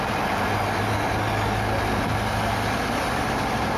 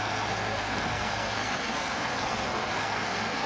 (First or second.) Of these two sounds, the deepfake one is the second